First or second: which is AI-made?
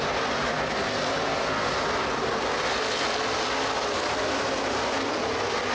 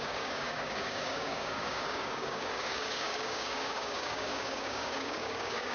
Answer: second